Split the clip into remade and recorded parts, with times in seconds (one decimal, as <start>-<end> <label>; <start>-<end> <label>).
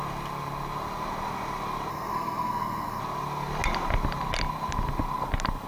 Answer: 0.0-1.9 recorded; 1.9-3.0 remade; 3.0-5.7 recorded